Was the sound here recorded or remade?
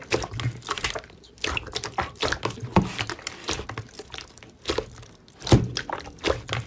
recorded